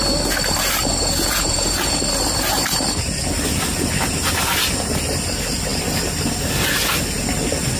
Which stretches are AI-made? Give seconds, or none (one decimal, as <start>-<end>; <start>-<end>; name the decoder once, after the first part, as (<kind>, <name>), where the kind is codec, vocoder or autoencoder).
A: 1.0-2.0 (vocoder, Vocos)